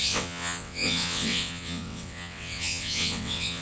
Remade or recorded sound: remade